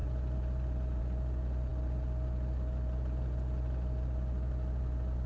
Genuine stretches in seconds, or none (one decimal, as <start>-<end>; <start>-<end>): 0.0-5.3